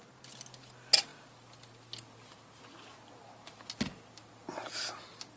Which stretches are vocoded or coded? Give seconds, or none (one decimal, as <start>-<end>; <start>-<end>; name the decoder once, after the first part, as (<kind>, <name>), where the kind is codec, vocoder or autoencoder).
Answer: none